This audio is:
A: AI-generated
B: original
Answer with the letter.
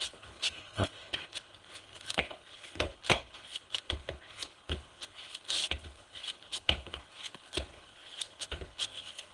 A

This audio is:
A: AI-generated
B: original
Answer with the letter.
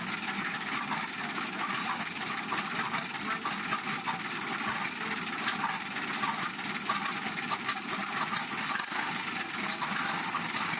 B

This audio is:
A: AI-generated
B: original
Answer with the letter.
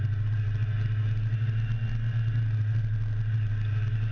B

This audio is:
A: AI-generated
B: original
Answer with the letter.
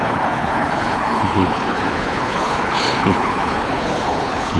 A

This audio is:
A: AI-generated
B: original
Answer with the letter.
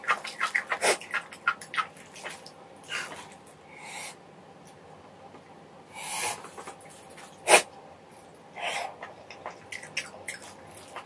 B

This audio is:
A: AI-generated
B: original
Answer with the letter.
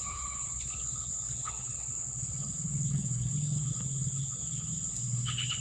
A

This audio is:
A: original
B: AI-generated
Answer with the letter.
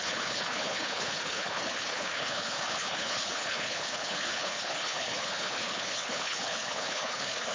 B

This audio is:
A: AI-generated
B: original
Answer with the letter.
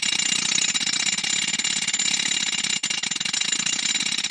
B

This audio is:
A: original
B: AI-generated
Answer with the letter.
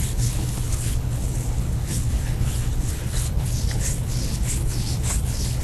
B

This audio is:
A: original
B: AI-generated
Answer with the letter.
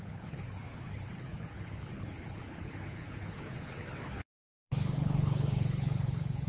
B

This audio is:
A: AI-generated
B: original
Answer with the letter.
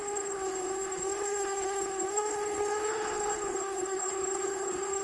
A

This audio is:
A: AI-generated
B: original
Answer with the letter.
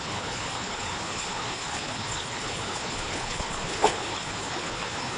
A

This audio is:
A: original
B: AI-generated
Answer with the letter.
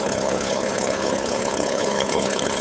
B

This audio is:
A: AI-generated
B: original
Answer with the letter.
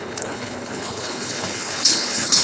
A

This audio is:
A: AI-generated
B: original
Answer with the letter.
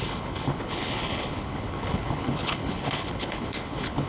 A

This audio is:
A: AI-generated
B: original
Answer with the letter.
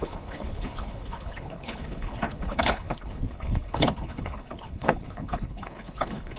A